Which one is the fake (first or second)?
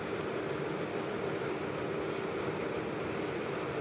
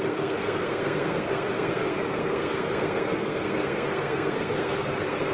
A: second